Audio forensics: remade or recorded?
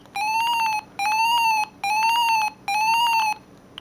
recorded